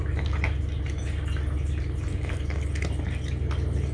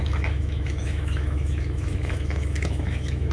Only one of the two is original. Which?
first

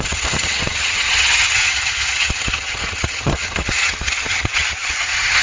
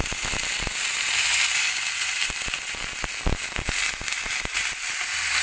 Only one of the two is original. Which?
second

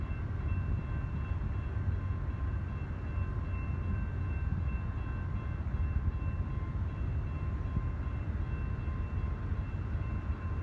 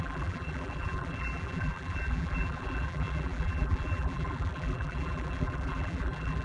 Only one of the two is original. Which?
first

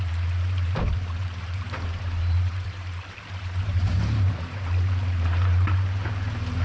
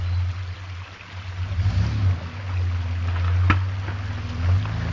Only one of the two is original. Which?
second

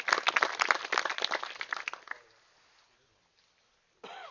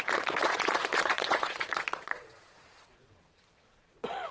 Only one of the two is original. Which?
first